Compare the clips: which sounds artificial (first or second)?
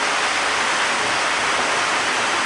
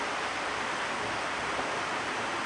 second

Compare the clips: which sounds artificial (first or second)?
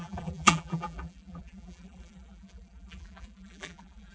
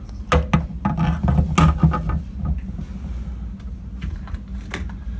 first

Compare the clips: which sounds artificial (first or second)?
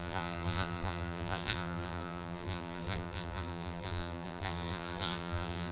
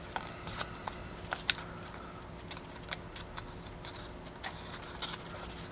first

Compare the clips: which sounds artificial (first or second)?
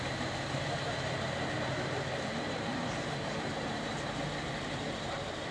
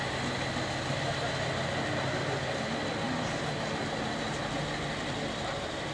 first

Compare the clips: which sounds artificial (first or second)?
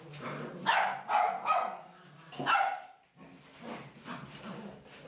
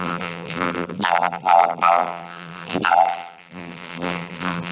second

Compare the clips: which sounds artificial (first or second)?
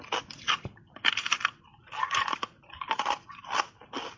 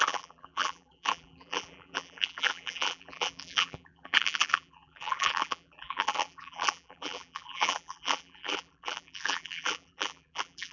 second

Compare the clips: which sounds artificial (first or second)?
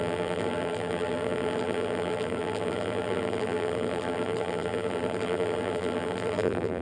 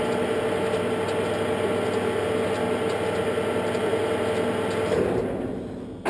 first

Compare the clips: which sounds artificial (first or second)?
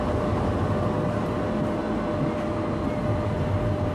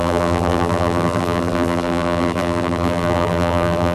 second